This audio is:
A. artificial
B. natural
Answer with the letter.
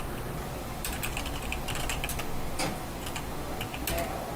B